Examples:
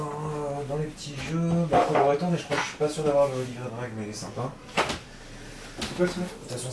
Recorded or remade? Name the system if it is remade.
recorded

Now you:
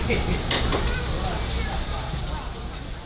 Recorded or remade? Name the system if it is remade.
recorded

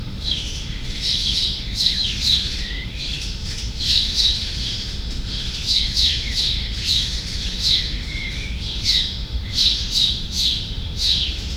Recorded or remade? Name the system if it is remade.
remade, autoencoder, DAC-VAE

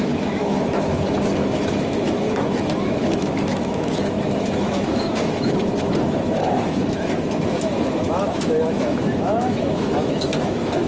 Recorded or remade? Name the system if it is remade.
remade, autoencoder, DAC-VAE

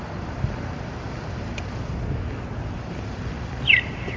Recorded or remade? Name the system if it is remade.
recorded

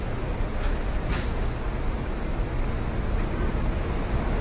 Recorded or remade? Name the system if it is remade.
recorded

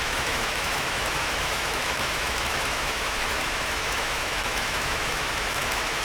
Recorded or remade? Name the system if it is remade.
remade, autoencoder, DAC-VAE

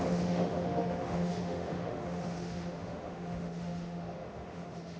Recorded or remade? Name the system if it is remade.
remade, autoencoder, DAC-VAE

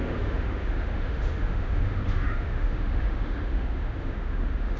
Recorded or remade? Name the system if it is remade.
remade, autoencoder, DAC-VAE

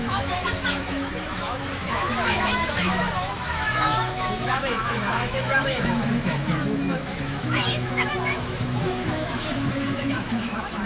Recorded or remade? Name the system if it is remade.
remade, autoencoder, DAC-VAE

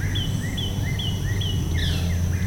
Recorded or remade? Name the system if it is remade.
recorded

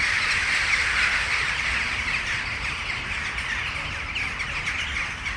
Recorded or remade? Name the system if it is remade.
recorded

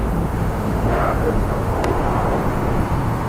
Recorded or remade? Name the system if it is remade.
remade, autoencoder, DAC-VAE